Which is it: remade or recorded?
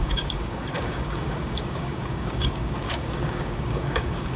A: remade